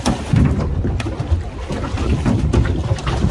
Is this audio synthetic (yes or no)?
no